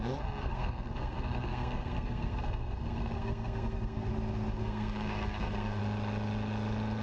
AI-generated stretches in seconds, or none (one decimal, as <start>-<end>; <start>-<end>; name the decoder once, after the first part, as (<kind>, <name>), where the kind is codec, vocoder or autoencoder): 0.4-4.1 (codec, SNAC); 4.6-5.8